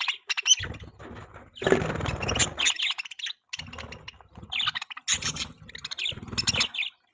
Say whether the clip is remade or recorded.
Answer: recorded